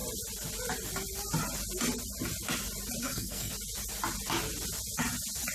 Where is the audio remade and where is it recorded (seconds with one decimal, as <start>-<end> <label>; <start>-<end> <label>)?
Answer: 0.0-3.0 recorded; 3.0-3.5 remade; 3.5-5.5 recorded